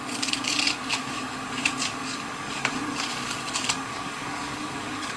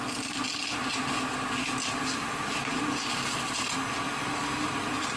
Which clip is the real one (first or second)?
second